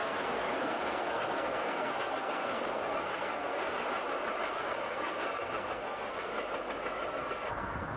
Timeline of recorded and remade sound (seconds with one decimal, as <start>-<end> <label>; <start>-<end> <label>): 0.0-3.8 remade; 3.8-4.5 recorded; 4.5-6.3 remade; 6.3-7.1 recorded; 7.1-8.0 remade

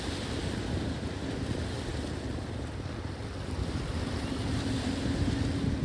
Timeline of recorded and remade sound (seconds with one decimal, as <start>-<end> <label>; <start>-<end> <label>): 0.0-5.8 recorded